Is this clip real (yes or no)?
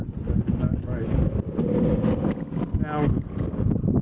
yes